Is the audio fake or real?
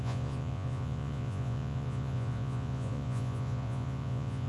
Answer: fake